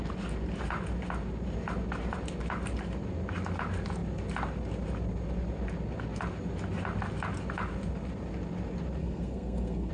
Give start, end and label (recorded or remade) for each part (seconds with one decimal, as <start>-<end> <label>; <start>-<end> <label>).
0.0-9.0 recorded; 9.0-9.9 remade